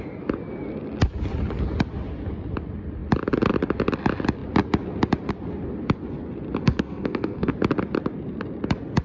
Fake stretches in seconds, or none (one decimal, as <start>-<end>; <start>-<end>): 6.6-7.5